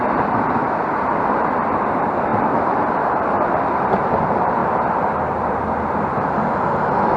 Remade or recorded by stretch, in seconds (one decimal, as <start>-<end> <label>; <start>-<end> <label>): 0.0-0.6 remade; 0.6-1.8 recorded; 1.8-7.2 remade